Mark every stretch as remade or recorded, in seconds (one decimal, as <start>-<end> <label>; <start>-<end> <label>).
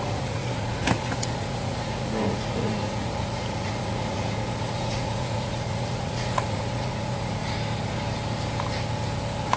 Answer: 0.0-7.4 remade; 7.4-9.6 recorded